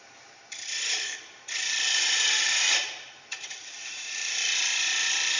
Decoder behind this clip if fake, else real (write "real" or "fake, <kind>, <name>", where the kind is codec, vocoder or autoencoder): fake, vocoder, BigVGAN v2